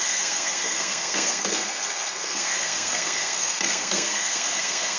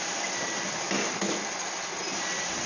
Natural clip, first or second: second